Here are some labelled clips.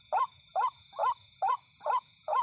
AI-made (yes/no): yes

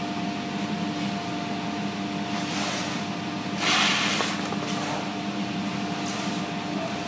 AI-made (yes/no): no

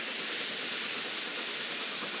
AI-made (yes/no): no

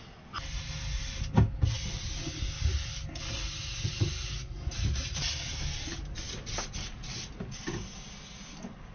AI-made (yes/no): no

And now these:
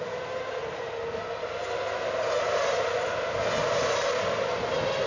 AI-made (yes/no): no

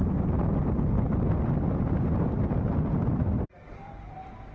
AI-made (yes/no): no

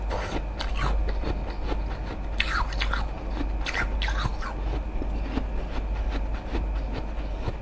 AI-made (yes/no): no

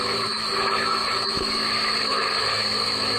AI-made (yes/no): yes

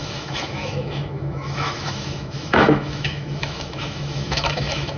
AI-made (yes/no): yes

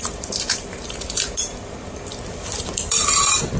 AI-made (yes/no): yes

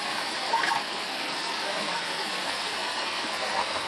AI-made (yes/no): yes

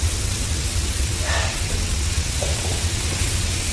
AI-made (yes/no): yes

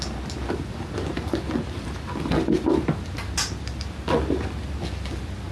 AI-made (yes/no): no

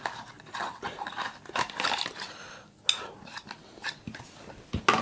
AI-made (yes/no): no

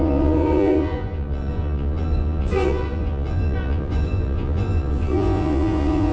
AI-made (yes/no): yes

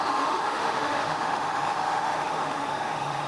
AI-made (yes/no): yes